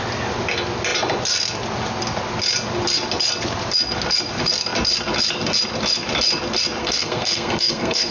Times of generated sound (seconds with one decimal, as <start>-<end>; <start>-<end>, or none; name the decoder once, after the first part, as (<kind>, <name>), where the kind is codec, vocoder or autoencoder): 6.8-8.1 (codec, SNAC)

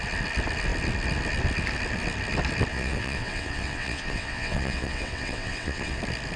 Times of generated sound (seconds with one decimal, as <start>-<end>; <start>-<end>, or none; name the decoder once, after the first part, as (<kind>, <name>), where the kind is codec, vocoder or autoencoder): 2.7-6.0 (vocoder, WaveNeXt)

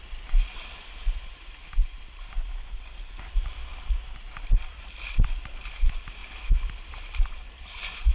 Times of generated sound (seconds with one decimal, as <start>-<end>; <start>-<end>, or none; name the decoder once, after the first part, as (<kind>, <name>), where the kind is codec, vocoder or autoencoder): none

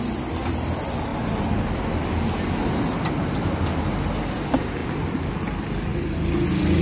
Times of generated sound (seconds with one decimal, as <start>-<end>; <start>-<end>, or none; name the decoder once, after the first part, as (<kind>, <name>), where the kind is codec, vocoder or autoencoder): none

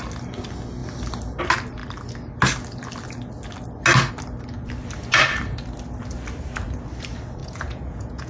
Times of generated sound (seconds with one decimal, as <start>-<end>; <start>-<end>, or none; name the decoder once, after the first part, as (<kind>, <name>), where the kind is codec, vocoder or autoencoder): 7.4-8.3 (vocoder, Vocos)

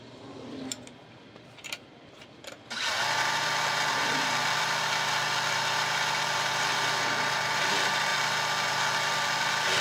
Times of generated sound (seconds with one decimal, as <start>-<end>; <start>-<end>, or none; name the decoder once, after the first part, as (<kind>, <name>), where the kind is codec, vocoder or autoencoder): 0.0-6.7 (vocoder, BigVGAN v2); 7.7-8.1; 8.7-9.8